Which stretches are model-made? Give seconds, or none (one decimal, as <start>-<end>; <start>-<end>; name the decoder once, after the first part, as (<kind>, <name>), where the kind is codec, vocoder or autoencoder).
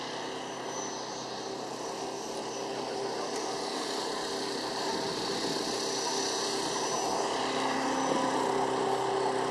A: none